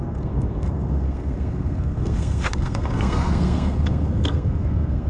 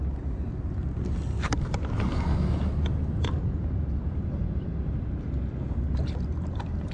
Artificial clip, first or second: first